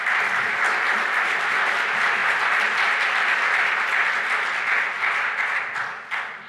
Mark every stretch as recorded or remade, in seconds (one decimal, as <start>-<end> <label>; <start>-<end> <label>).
0.0-6.5 recorded